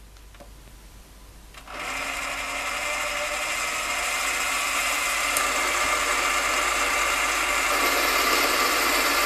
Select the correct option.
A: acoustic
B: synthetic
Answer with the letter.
A